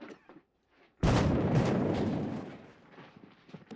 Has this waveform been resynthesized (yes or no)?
yes